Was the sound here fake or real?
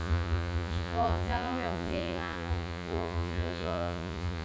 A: fake